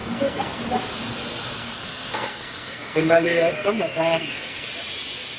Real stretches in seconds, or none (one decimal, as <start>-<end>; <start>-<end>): 0.6-1.5; 4.7-5.4